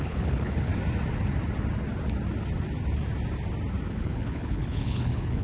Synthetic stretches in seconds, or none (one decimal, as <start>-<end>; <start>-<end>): 0.0-0.7; 3.9-5.4